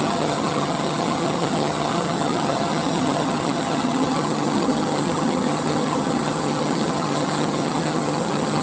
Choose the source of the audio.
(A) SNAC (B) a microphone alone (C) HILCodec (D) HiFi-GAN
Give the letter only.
D